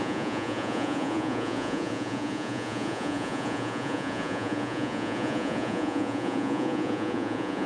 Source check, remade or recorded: remade